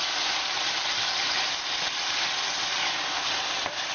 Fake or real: real